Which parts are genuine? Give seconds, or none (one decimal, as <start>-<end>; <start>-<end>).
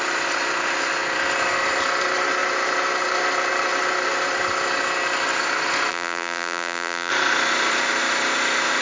0.0-5.9; 7.1-8.8